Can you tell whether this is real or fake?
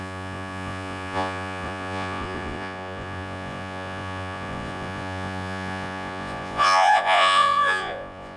fake